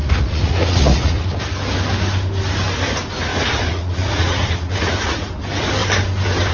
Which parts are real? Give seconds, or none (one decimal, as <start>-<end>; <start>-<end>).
1.4-3.3; 5.3-6.5